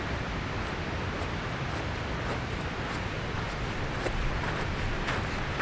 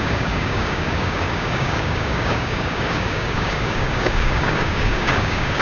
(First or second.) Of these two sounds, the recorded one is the first